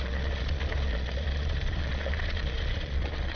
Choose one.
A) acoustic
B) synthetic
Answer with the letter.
B